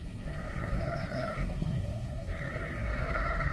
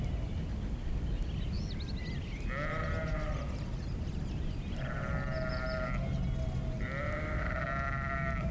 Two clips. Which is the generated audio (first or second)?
first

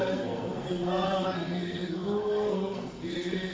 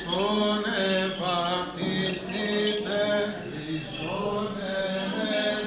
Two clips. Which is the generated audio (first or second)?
first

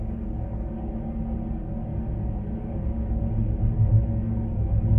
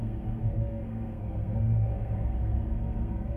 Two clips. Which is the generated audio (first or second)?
second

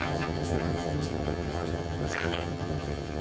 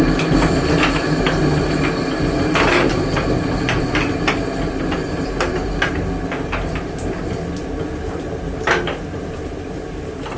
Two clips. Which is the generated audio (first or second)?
first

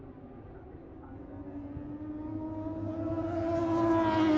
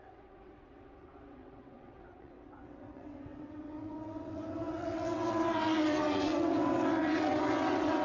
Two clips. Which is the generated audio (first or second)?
second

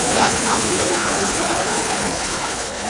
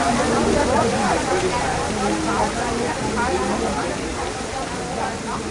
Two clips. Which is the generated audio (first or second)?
first